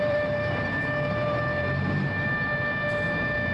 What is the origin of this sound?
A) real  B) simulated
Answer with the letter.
B